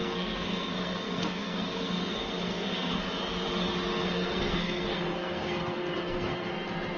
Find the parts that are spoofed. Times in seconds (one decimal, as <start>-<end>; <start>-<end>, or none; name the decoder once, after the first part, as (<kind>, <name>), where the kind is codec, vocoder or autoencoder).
0.0-3.0 (codec, SNAC); 4.0-6.5